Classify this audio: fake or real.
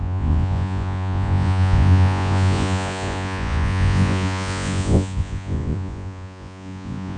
fake